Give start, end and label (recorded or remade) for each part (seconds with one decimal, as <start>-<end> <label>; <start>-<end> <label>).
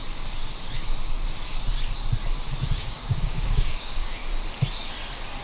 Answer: 0.0-2.8 recorded; 2.8-4.2 remade; 4.2-5.4 recorded